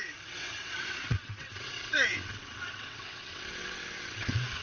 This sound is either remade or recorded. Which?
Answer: remade